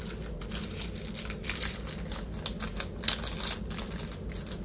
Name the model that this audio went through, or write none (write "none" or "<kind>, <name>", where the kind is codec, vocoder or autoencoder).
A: none